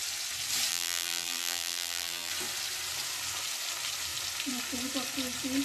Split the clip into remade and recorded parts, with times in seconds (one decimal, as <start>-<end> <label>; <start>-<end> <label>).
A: 0.0-0.7 recorded; 0.7-2.3 remade; 2.3-5.6 recorded